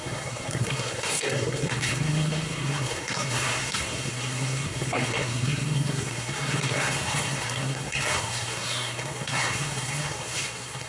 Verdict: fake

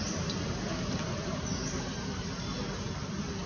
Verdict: real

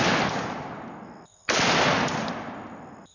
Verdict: real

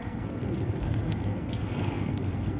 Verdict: fake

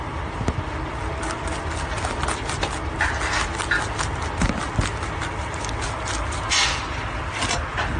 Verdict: real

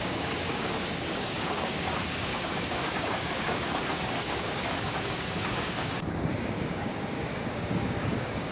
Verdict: fake